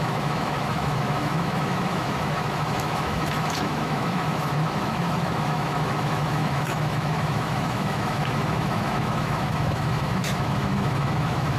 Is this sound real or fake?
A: fake